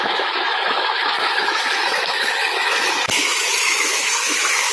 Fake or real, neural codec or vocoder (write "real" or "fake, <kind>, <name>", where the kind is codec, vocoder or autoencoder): fake, autoencoder, DAC-VAE